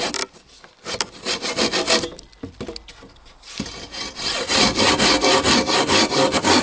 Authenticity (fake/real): real